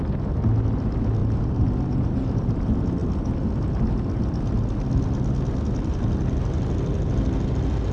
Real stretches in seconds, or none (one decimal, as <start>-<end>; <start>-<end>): 0.0-7.9